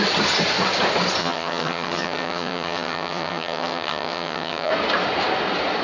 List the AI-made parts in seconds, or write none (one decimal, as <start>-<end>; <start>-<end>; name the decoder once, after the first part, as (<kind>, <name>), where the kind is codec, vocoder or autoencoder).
1.2-4.7 (vocoder, HiFi-GAN)